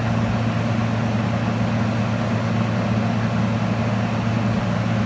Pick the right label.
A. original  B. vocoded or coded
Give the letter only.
A